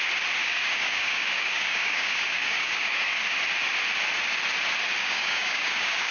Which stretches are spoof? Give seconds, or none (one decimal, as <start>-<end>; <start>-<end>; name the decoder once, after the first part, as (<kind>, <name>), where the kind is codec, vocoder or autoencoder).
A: 0.4-3.2 (codec, DAC); 5.0-6.1